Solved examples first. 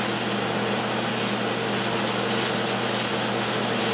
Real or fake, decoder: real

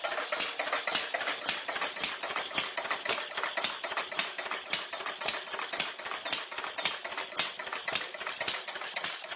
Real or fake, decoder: real